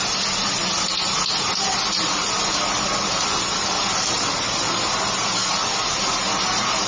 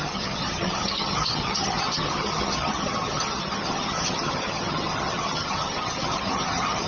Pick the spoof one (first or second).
second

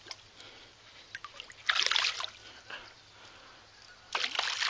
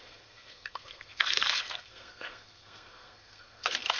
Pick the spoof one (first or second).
second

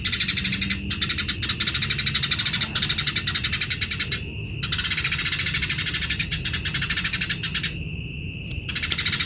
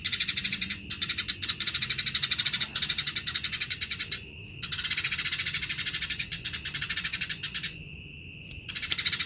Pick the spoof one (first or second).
second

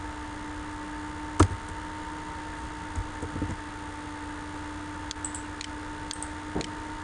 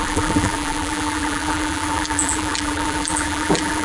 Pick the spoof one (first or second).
second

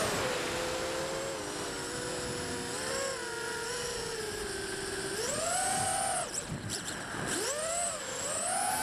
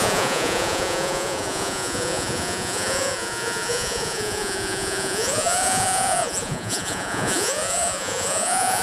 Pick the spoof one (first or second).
second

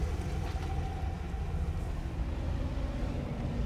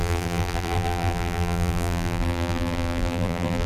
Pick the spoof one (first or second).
second